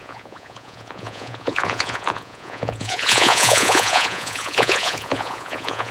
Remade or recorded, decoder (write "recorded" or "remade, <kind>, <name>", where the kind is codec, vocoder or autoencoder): remade, vocoder, Vocos